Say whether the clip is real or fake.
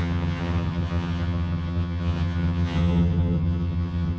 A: fake